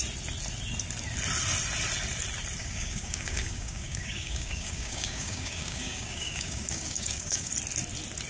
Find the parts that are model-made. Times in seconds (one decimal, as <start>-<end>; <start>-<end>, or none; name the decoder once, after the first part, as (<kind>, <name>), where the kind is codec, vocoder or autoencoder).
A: 2.6-7.5 (codec, DAC)